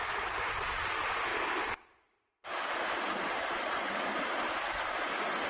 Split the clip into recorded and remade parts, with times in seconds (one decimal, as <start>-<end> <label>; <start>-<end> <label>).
0.0-1.3 recorded; 1.3-3.9 remade; 3.9-5.5 recorded